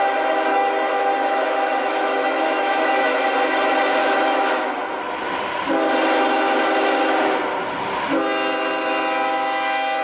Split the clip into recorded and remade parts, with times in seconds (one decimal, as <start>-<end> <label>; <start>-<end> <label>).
0.0-0.5 recorded; 0.5-3.1 remade; 3.1-4.0 recorded; 4.0-5.0 remade; 5.0-10.0 recorded